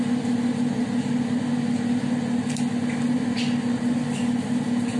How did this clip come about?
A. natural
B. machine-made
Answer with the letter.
A